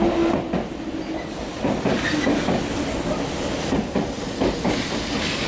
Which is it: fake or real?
real